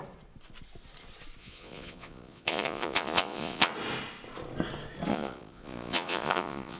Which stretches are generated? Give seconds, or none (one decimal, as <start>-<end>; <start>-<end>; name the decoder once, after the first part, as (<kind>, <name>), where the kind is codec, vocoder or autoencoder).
1.4-3.7 (vocoder, Vocos); 5.1-6.8